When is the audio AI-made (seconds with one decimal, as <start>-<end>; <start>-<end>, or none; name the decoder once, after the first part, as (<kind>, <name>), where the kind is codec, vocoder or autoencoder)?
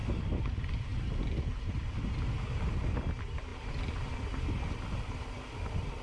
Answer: 0.0-0.5 (vocoder, BigVGAN v2)